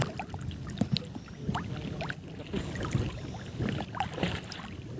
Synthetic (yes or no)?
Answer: no